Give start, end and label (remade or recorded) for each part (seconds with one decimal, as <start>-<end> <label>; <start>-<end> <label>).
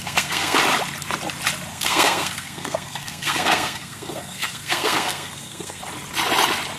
0.0-0.6 remade; 0.6-1.7 recorded; 1.7-5.8 remade; 5.8-6.8 recorded